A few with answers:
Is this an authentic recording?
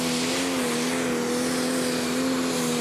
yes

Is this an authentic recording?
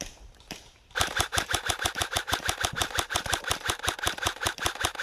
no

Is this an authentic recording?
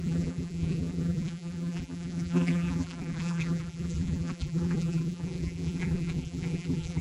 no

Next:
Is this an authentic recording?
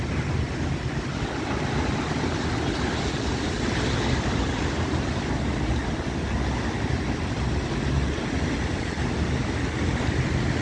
yes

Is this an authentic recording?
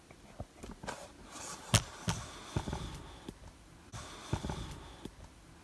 yes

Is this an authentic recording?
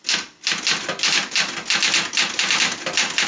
yes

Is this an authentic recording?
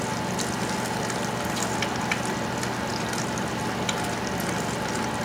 yes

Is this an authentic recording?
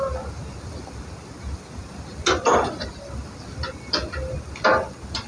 yes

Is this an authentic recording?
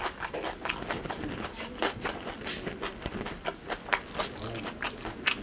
yes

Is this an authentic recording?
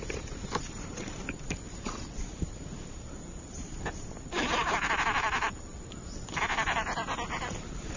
no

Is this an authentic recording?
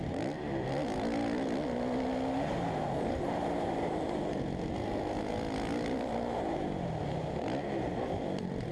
yes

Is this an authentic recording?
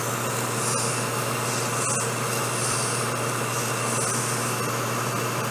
yes